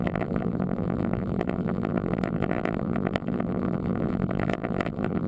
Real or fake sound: fake